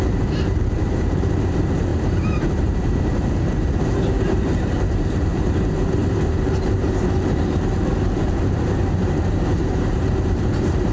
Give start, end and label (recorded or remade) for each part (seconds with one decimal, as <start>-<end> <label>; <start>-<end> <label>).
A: 0.0-10.9 remade